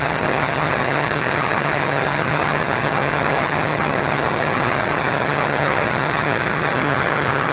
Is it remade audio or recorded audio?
remade